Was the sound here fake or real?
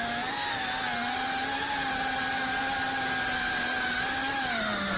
real